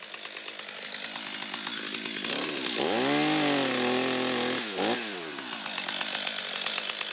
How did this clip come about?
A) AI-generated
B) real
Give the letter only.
B